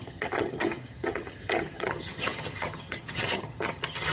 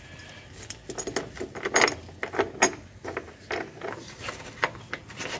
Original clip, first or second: second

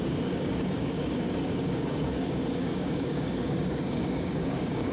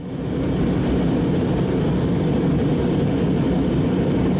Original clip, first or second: second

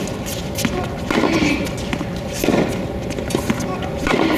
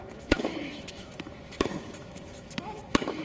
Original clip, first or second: first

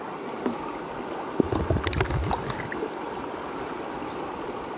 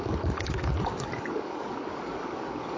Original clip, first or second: first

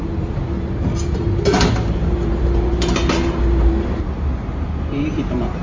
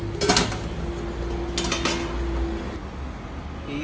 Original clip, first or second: second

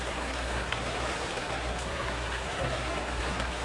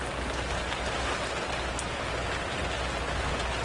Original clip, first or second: second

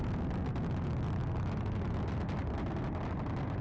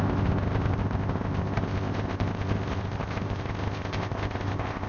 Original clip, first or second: first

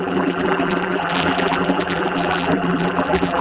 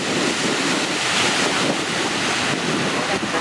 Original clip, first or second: second